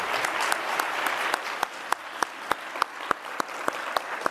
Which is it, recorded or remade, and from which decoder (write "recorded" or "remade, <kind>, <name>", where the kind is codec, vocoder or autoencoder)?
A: recorded